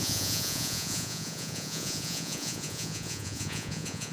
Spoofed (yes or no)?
yes